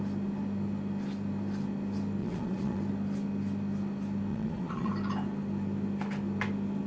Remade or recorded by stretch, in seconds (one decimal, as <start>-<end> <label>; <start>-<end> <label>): 0.0-2.2 recorded; 2.2-2.8 remade; 2.8-4.3 recorded; 4.3-4.9 remade; 4.9-6.9 recorded